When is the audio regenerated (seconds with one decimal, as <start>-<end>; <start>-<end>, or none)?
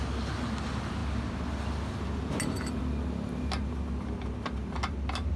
none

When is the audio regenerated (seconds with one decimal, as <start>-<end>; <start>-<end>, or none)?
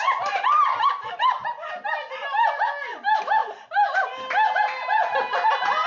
none